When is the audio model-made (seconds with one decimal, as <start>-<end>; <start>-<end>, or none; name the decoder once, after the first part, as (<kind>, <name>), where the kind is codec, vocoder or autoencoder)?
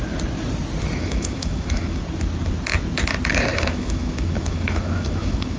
1.0-2.0 (autoencoder, DAC-VAE); 3.5-5.6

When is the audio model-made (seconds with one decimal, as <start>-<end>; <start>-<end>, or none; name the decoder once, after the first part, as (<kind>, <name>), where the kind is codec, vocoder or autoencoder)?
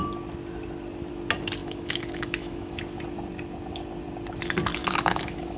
1.6-2.8 (autoencoder, DAC-VAE); 4.8-5.6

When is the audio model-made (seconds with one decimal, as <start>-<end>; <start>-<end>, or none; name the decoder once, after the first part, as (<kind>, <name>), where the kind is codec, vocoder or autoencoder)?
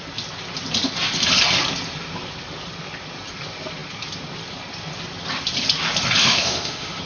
6.2-7.0 (autoencoder, DAC-VAE)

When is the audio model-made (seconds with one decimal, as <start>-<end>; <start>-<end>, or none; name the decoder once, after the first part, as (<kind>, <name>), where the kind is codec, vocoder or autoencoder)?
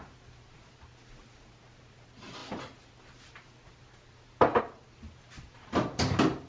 none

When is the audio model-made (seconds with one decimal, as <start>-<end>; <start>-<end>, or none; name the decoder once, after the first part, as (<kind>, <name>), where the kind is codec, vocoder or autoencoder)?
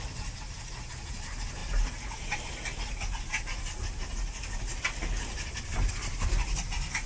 none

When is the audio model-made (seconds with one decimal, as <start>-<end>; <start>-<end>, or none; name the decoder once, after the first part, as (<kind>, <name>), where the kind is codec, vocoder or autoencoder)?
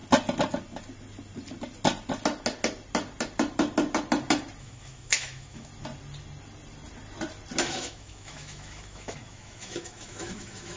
4.6-5.7 (autoencoder, DAC-VAE); 7.6-10.8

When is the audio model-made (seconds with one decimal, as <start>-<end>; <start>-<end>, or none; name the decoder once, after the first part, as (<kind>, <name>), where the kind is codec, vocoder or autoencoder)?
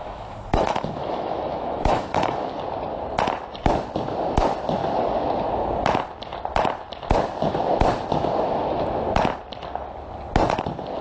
0.0-2.5 (autoencoder, DAC-VAE)